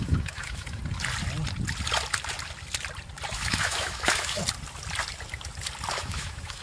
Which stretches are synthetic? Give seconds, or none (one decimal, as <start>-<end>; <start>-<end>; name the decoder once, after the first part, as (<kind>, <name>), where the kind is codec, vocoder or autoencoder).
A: 0.0-0.8 (autoencoder, DAC-VAE); 3.3-4.4; 5.9-6.6